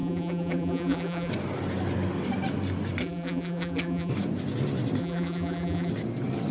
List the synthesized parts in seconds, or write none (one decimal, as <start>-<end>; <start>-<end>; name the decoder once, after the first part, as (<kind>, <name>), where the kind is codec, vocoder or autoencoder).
0.0-1.3 (vocoder, BigVGAN v2); 3.0-4.1; 5.0-5.9